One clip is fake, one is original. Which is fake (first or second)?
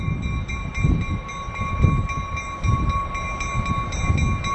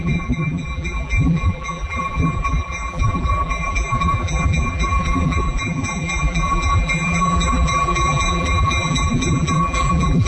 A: second